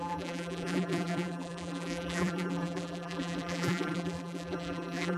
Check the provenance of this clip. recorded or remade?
remade